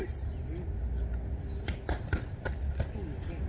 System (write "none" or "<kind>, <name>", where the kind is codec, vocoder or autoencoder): none